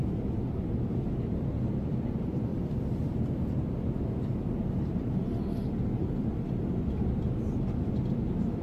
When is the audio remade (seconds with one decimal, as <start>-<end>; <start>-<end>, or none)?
2.5-3.7; 6.0-7.0